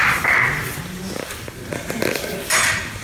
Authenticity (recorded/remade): recorded